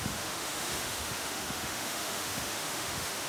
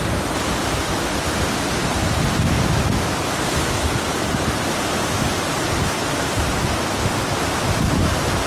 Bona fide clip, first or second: second